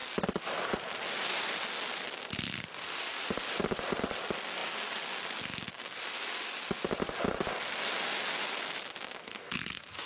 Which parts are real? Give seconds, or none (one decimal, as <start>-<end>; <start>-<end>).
0.0-9.2